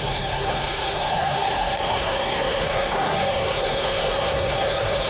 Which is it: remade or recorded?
remade